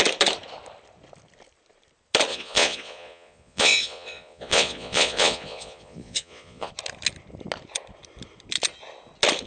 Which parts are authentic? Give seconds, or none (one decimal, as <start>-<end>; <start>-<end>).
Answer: 0.0-2.3; 6.7-9.5